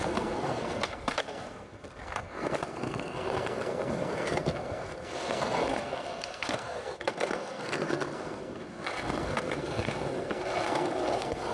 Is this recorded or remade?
remade